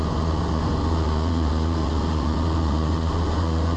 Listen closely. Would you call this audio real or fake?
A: fake